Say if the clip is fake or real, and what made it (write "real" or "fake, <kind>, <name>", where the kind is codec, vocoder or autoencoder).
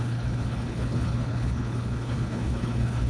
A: fake, codec, HILCodec